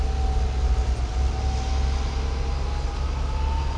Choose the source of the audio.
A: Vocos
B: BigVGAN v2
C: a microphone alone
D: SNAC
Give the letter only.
C